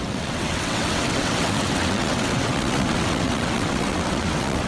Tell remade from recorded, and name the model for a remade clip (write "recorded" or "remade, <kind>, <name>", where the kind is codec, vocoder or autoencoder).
remade, vocoder, WaveNeXt